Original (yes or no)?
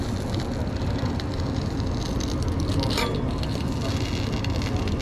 yes